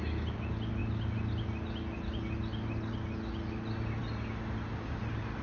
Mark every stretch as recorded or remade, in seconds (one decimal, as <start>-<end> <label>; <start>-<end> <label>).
0.0-5.4 recorded